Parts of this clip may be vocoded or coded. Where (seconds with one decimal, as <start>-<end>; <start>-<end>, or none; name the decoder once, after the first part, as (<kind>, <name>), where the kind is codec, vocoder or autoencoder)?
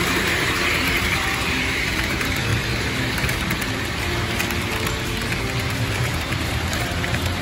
0.0-2.5 (vocoder, BigVGAN v2); 5.6-7.4